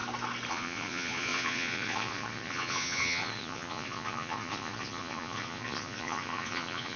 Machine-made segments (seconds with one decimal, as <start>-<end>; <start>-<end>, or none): 0.5-7.0